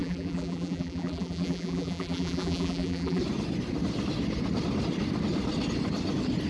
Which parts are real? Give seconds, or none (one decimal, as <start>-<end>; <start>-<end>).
3.2-6.5